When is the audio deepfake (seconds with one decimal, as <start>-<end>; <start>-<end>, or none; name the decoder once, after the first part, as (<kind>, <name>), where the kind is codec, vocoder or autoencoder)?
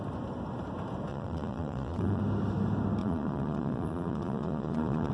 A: 1.1-2.2 (vocoder, Vocos); 3.0-5.1